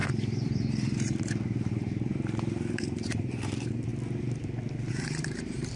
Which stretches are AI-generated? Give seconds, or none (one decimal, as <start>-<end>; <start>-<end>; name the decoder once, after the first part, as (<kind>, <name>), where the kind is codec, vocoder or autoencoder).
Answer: 0.0-3.9 (vocoder, BigVGAN v2); 4.9-5.8